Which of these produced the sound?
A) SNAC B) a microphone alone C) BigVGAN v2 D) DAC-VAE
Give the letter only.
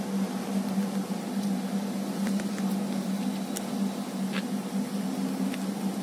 B